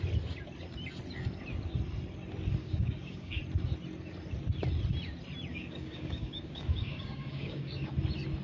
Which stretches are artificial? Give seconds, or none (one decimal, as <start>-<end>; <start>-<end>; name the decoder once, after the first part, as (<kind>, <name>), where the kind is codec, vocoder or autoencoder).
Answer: 2.6-3.4 (codec, DAC); 5.5-7.9